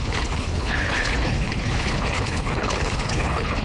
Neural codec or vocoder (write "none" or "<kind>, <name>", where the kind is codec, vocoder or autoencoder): codec, HILCodec